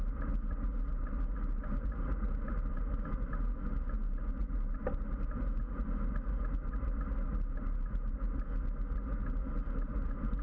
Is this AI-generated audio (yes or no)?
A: no